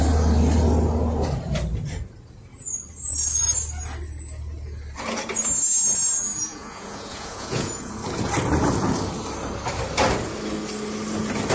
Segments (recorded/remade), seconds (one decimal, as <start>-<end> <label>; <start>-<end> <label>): 0.0-6.5 recorded; 6.5-7.9 remade; 7.9-11.5 recorded